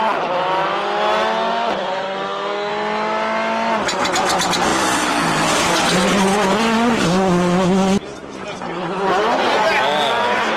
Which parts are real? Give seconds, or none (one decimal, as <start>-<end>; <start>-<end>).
0.0-1.9; 2.7-10.6